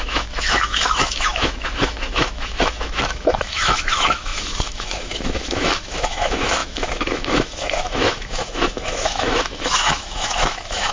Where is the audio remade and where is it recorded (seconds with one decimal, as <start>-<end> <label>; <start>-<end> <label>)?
0.0-10.9 remade